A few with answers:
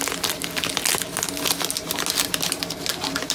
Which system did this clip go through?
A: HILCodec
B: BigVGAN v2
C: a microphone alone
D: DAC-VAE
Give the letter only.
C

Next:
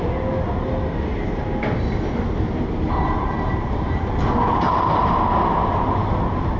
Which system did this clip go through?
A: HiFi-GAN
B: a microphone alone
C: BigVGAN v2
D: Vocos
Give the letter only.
B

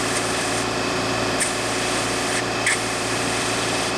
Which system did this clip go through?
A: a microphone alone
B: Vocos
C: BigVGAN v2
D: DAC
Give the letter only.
C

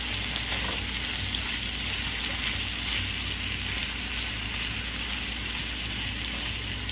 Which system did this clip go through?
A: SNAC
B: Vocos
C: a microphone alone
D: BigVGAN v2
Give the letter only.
C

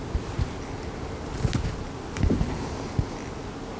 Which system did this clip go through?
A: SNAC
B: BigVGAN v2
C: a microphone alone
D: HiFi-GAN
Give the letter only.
C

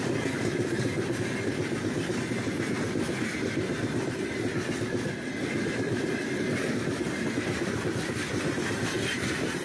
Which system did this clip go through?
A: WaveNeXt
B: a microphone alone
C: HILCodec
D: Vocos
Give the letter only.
B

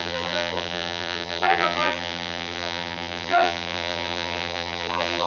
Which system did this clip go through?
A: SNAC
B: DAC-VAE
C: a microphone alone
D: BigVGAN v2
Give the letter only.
D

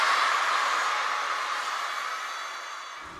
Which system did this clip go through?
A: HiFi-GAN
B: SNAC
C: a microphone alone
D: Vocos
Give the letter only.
C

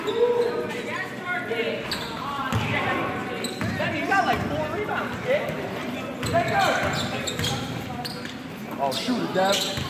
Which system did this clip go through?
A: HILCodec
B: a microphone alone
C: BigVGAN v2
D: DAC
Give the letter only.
B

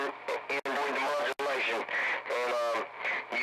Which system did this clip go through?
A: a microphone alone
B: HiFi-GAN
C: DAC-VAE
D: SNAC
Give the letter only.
A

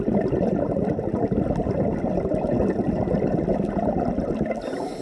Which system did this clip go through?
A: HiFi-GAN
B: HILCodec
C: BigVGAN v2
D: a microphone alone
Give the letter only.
D